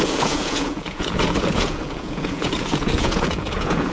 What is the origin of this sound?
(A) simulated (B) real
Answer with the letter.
A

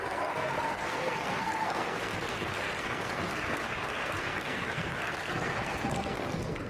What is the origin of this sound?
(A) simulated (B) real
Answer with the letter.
A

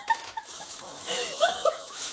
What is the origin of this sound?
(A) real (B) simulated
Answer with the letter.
B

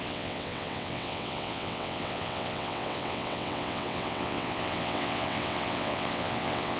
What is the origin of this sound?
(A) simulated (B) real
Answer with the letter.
A